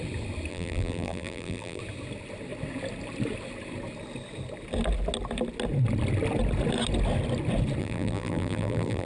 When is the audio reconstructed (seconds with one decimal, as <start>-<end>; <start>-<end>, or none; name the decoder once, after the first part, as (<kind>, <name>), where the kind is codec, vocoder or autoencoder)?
0.5-1.8 (vocoder, BigVGAN v2); 7.8-9.1